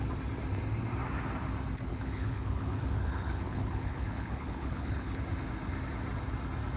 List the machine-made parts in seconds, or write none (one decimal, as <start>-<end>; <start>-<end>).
1.9-5.2

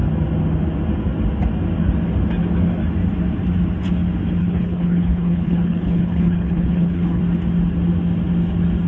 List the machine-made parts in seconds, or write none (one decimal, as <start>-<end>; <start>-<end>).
4.4-7.2